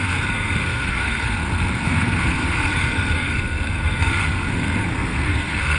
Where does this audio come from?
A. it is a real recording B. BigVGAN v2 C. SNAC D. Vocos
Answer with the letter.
C